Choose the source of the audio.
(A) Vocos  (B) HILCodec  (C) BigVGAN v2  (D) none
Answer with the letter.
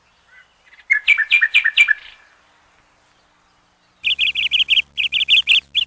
D